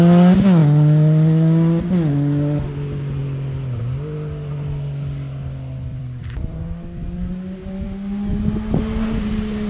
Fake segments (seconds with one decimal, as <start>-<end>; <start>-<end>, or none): 5.9-6.6